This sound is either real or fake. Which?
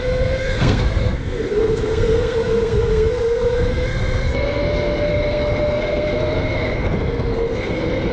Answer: fake